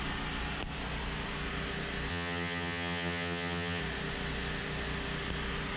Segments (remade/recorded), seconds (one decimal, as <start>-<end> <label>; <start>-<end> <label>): 0.0-2.1 recorded; 2.1-3.8 remade; 3.8-5.8 recorded